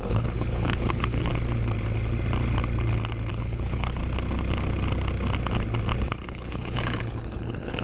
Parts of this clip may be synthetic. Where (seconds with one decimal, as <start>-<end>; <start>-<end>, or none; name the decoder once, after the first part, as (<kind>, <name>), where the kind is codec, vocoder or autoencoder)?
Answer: 0.0-1.3 (codec, HILCodec); 3.3-4.0; 6.0-7.8